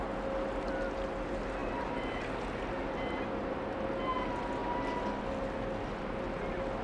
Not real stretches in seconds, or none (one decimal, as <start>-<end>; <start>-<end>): 1.6-2.2